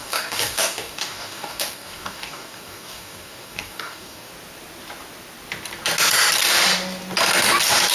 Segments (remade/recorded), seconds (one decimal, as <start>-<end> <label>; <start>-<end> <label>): 0.0-4.3 remade; 4.3-7.9 recorded